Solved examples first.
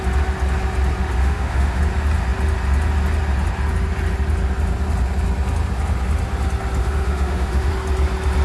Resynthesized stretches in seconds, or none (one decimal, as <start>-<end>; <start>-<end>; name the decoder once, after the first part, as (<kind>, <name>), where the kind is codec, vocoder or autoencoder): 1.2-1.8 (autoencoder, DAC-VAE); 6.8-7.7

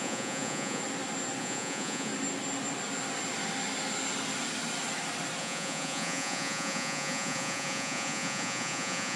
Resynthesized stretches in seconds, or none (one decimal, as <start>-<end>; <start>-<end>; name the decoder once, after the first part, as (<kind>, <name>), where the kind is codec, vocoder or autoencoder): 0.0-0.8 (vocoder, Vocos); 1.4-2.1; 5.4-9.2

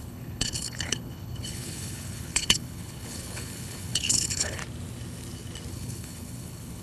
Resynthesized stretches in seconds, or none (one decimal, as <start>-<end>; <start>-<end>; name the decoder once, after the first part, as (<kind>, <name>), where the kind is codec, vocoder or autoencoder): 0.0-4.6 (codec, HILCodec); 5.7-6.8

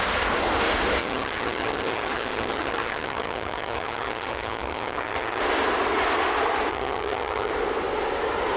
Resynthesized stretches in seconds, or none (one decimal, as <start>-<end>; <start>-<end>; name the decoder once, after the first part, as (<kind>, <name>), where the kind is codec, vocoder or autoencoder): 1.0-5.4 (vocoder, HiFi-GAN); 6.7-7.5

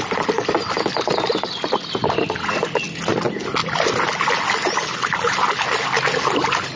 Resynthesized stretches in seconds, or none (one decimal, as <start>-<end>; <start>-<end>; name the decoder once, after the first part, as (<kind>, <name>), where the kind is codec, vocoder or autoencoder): none